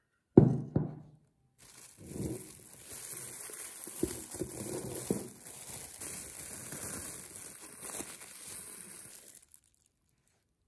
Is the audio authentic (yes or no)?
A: yes